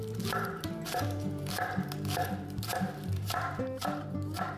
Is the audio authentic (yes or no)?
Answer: no